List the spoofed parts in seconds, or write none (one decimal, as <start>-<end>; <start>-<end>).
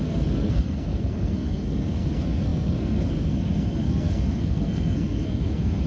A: 0.0-5.9